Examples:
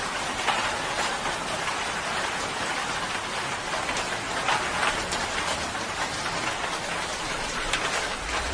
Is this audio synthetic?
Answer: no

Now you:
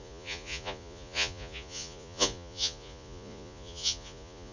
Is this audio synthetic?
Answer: yes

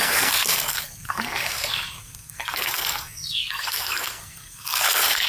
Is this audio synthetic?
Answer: yes